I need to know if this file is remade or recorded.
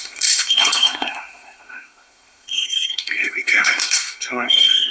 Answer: remade